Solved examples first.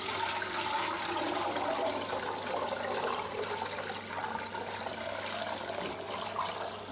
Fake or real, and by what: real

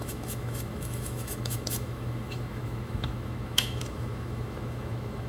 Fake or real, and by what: fake, autoencoder, DAC-VAE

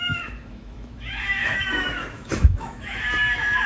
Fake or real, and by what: fake, autoencoder, DAC-VAE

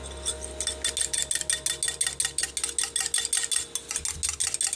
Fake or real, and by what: real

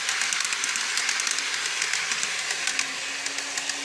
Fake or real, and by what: real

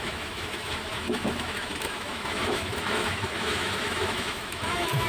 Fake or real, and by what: fake, autoencoder, DAC-VAE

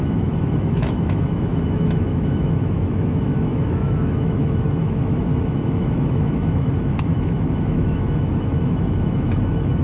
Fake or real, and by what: fake, autoencoder, DAC-VAE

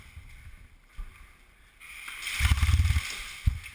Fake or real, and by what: real